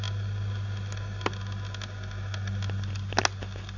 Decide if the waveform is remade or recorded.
recorded